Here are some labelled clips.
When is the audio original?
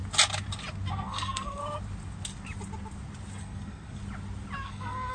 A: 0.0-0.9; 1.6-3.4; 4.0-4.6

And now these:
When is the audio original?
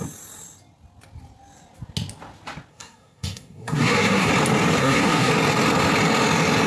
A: 0.0-2.7; 4.3-4.8; 5.3-6.7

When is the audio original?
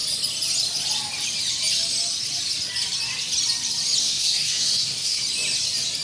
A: 0.0-4.0; 5.2-6.0